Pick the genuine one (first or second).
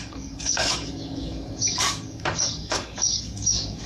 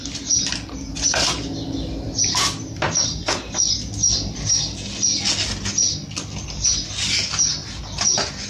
second